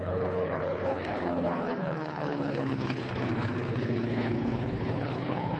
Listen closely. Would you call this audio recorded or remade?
remade